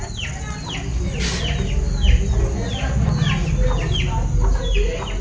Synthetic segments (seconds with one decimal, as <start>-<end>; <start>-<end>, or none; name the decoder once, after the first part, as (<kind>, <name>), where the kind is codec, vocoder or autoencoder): none